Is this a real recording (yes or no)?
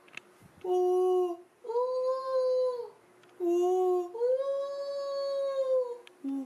yes